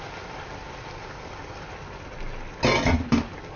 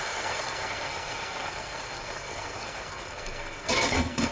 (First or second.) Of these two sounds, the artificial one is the second